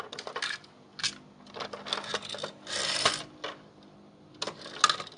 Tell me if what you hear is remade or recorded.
recorded